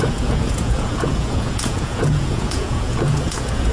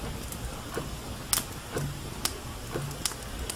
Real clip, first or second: second